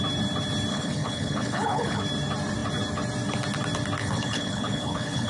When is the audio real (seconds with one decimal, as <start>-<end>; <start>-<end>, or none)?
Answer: 0.0-0.7; 2.0-4.0